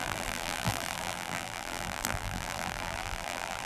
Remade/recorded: remade